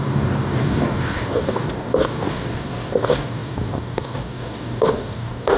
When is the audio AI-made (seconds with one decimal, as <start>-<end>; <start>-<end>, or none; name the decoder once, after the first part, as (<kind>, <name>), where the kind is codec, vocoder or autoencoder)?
0.0-5.6 (codec, DAC)